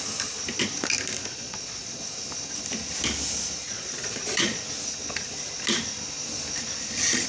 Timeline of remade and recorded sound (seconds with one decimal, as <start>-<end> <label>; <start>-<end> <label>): 0.0-1.2 recorded; 1.2-2.0 remade; 2.0-3.6 recorded; 3.6-4.6 remade; 4.6-7.3 recorded